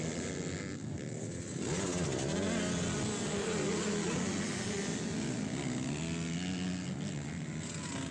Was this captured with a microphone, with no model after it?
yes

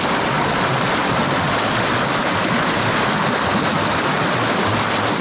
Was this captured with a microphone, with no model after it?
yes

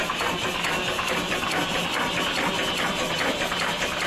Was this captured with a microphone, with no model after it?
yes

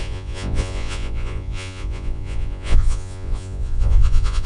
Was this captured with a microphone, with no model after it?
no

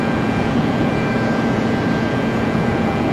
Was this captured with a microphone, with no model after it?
no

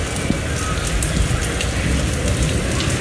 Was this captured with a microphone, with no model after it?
yes